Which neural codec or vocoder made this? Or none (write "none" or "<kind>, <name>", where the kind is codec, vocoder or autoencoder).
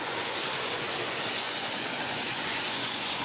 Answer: vocoder, Vocos